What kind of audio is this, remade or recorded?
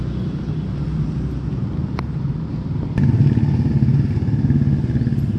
recorded